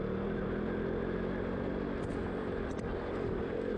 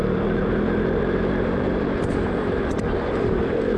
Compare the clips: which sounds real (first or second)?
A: first